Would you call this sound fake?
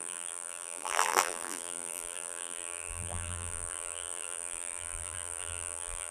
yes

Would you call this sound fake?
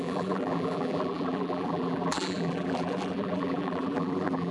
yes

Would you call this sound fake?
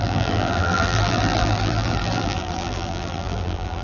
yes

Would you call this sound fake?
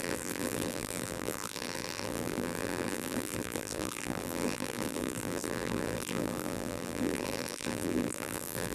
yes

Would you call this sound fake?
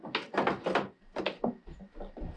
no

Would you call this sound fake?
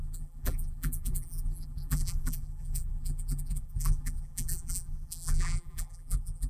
yes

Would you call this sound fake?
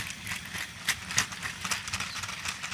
no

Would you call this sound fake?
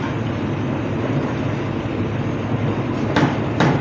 no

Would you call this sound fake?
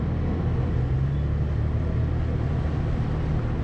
no